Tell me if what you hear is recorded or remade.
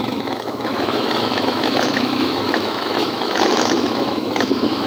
remade